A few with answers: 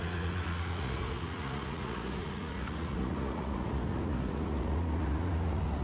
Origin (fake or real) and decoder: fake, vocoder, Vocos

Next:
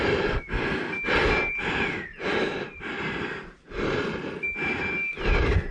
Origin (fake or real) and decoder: real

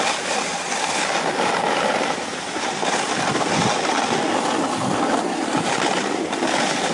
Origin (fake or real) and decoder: real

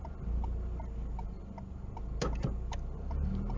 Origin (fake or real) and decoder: real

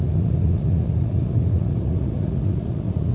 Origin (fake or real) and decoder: fake, vocoder, Vocos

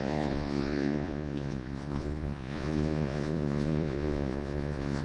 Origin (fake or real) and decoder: fake, vocoder, Vocos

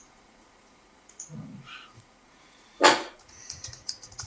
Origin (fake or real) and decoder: fake, vocoder, Vocos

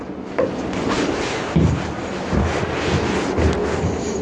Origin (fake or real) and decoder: real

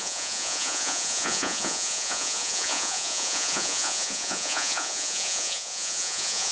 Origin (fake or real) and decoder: fake, vocoder, Vocos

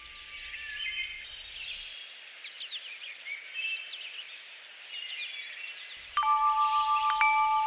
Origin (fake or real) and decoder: real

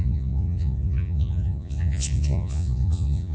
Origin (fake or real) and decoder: fake, vocoder, Vocos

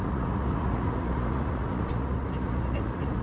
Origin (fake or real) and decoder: fake, vocoder, Vocos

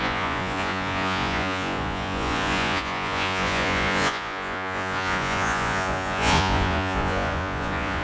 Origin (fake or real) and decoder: fake, vocoder, Vocos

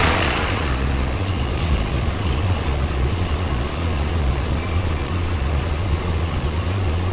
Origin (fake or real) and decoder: fake, vocoder, Vocos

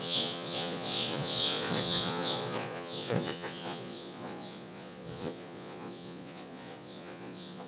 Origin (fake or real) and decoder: fake, vocoder, Vocos